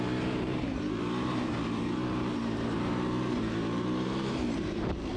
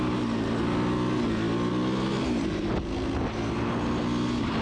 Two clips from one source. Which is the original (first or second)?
second